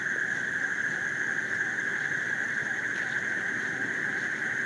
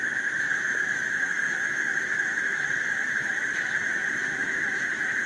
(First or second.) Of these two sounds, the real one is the first